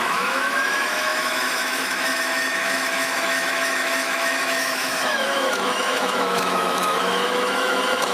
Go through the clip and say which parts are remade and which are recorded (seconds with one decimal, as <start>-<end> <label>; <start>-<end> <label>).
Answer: 0.0-8.1 remade